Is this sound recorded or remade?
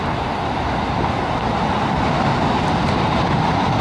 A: recorded